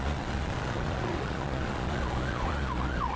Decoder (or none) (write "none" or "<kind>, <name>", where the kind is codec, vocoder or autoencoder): vocoder, Vocos